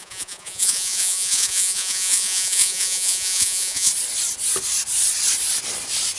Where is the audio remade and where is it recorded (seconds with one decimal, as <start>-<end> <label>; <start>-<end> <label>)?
0.0-3.9 remade; 3.9-6.2 recorded